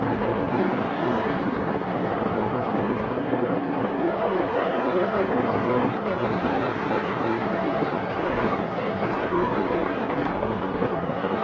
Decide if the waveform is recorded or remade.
remade